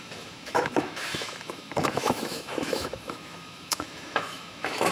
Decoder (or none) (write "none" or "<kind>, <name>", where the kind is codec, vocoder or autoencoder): autoencoder, DAC-VAE